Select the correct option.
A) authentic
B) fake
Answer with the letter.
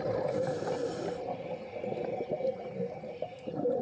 A